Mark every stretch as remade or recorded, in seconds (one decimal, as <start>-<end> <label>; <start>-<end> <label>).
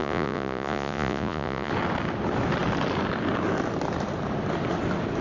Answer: 0.0-1.7 remade; 1.7-5.2 recorded